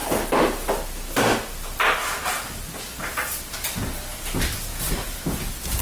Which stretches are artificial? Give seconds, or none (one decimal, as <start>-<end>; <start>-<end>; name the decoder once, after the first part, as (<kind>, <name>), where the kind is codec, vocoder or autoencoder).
none